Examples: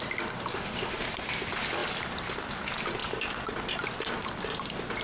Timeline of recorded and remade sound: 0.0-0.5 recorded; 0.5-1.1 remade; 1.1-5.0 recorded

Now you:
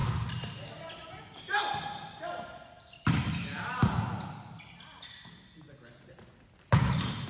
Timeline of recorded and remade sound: 0.0-7.3 recorded